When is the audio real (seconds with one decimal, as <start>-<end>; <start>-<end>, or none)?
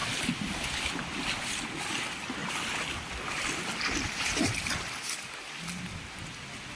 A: 0.0-6.8